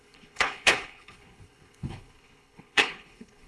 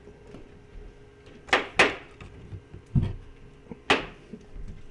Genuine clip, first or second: second